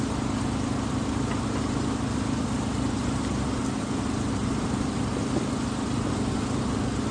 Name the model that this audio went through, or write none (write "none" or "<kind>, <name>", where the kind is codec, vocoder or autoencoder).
none